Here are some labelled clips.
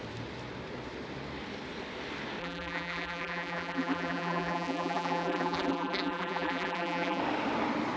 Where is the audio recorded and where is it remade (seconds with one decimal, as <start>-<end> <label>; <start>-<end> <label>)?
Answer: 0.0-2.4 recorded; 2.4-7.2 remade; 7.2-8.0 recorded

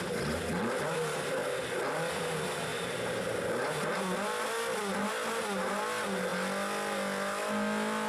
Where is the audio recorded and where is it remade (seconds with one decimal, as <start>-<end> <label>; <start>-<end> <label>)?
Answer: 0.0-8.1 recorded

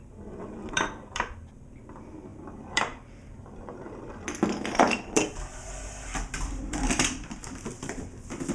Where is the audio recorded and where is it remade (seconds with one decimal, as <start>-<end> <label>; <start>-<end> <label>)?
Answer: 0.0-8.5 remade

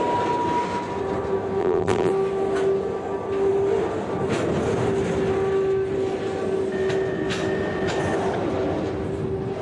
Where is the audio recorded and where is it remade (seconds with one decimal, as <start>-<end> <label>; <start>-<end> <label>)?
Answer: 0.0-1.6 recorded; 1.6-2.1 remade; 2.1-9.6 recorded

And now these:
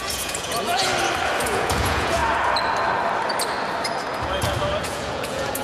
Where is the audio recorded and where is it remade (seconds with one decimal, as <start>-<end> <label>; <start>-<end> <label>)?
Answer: 0.0-0.9 remade; 0.9-1.4 recorded; 1.4-2.2 remade; 2.2-4.8 recorded; 4.8-5.6 remade

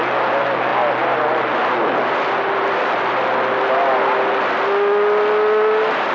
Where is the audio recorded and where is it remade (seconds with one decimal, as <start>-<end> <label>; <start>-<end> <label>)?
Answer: 0.0-6.1 recorded